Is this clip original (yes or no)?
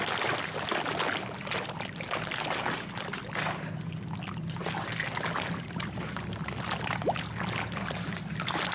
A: yes